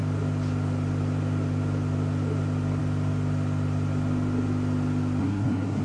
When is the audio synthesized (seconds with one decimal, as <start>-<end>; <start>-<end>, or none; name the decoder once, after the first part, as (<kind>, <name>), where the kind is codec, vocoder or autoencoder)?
5.2-5.8 (codec, SNAC)